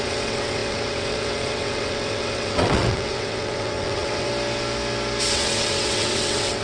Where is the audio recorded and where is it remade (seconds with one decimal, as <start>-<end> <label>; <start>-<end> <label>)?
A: 0.0-4.3 remade; 4.3-5.3 recorded; 5.3-6.6 remade